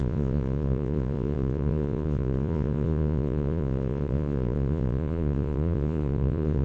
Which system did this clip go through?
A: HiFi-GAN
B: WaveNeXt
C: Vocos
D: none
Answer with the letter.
C